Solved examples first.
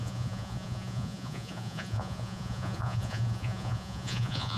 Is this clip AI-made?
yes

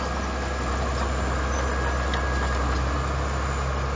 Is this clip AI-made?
no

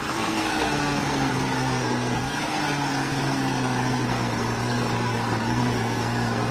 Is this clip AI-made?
yes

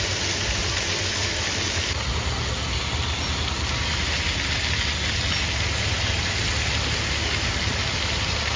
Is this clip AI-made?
no